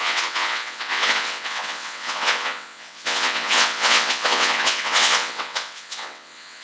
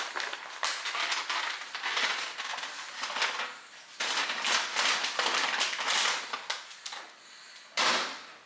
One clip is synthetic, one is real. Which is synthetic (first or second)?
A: first